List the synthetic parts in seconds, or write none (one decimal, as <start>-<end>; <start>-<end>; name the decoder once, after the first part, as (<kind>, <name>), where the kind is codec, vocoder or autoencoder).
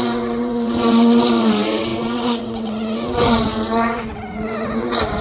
0.0-5.2 (vocoder, WaveNeXt)